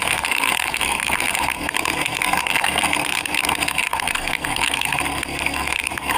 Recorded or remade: remade